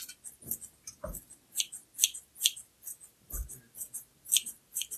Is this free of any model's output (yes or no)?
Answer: yes